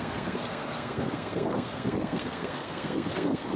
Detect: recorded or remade remade